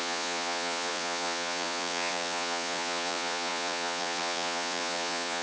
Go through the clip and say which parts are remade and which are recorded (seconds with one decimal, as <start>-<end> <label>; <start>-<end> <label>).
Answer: 0.0-5.4 remade